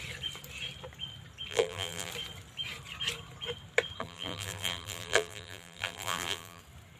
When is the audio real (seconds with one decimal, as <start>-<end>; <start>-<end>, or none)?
0.0-1.5; 2.1-4.0; 6.6-7.0